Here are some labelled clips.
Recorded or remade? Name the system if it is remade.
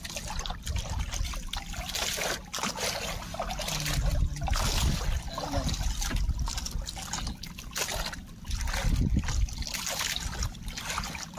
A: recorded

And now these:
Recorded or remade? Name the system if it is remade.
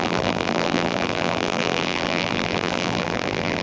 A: remade, vocoder, BigVGAN v2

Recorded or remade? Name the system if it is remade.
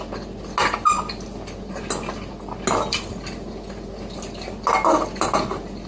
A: recorded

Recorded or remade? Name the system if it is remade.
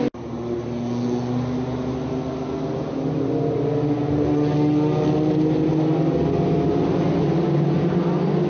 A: recorded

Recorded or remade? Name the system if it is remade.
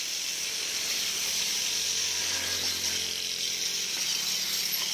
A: recorded